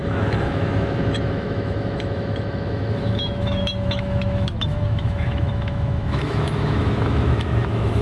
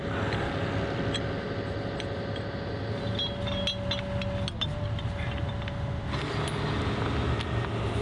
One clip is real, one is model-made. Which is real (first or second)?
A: second